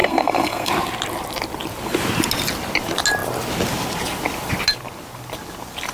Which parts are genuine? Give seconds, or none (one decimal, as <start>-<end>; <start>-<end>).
0.7-5.9